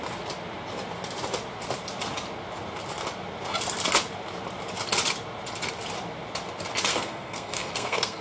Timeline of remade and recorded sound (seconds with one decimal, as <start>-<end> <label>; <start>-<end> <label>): 0.0-6.9 recorded; 6.9-8.2 remade